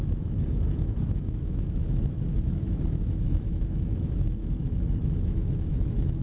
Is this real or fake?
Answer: fake